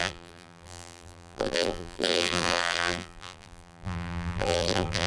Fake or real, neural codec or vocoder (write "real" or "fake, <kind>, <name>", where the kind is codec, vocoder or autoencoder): fake, vocoder, BigVGAN v2